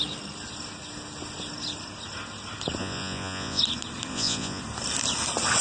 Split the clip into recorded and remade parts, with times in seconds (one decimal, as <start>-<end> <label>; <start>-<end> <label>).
0.0-2.8 recorded; 2.8-3.6 remade; 3.6-4.1 recorded; 4.1-4.6 remade; 4.6-5.6 recorded